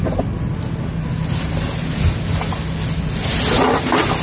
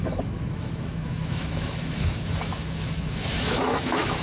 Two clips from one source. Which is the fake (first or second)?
second